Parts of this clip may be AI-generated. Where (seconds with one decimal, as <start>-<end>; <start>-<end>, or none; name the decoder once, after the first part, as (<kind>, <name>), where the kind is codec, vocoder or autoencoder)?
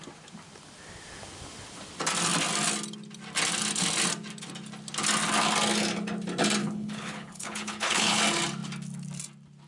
6.6-8.2 (codec, HILCodec)